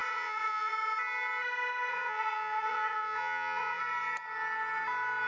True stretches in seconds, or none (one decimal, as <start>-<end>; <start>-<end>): 0.7-1.9; 3.8-5.3